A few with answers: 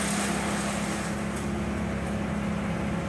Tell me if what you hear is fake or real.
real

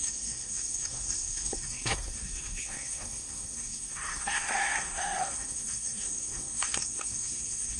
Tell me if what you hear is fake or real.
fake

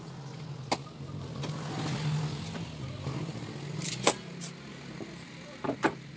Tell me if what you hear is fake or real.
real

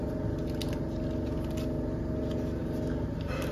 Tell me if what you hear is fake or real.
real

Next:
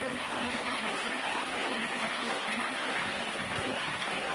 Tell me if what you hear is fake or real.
fake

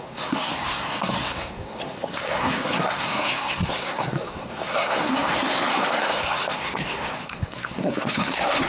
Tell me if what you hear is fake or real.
fake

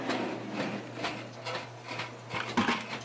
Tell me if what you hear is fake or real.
real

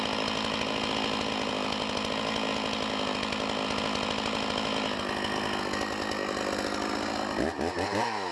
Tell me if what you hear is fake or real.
real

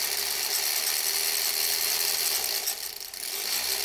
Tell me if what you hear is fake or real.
real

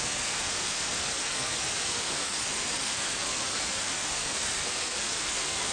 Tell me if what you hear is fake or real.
fake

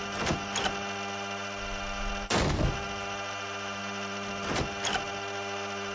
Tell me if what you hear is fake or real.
real